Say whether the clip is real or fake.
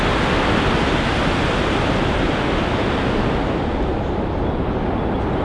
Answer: real